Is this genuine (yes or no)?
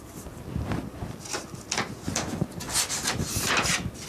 yes